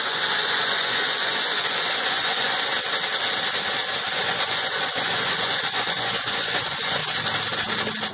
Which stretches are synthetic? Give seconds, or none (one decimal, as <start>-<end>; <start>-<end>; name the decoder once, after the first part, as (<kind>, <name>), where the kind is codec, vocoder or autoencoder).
0.0-2.7 (vocoder, Vocos); 4.1-7.0